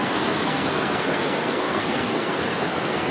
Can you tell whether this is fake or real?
fake